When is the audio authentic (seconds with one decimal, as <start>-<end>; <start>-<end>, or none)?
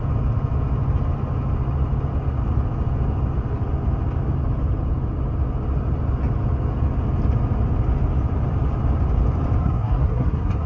0.0-9.6